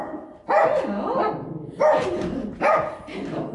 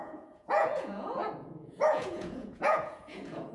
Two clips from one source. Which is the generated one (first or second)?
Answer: second